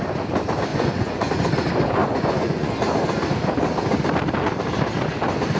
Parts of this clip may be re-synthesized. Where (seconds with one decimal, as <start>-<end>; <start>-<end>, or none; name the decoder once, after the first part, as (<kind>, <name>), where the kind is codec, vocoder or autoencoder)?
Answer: 0.7-1.3 (vocoder, Vocos); 2.0-2.7